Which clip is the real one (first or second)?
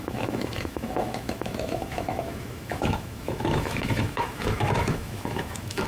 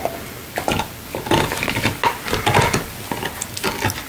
second